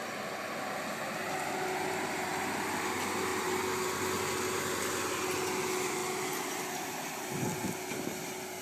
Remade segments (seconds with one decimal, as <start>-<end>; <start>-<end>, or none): none